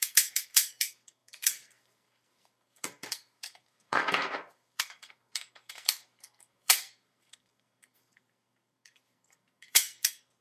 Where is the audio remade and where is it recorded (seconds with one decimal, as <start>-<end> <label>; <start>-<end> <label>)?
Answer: 0.0-10.4 remade

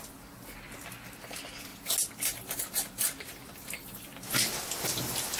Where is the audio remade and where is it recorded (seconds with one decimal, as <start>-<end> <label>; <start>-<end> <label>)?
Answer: 0.0-5.4 recorded